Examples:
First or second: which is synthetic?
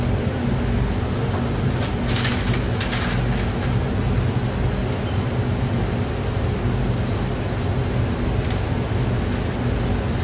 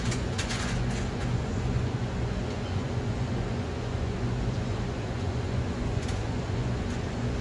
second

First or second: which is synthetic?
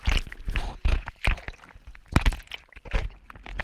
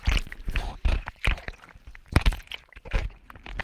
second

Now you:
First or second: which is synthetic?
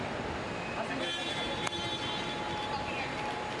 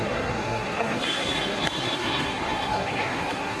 second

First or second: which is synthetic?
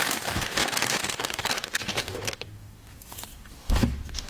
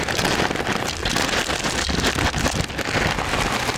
first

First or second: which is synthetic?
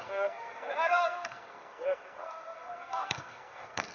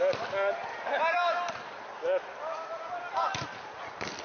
first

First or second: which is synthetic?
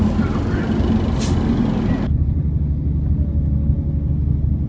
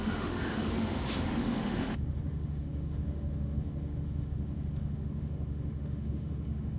second